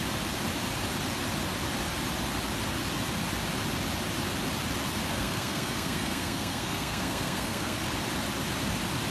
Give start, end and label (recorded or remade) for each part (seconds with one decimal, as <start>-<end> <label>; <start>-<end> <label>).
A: 0.0-5.1 recorded; 5.1-7.8 remade; 7.8-9.1 recorded